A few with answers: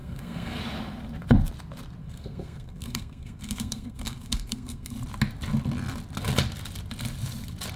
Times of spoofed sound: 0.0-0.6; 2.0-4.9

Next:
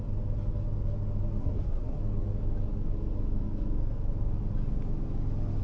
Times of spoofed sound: 1.4-2.0

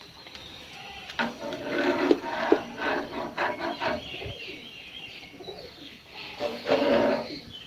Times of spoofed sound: 5.6-6.9

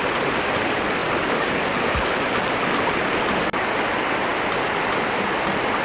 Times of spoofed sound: none

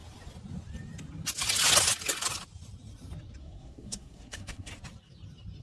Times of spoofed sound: 3.4-4.7